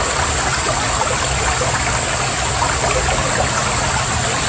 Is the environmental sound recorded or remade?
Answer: recorded